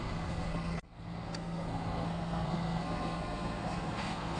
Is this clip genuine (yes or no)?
no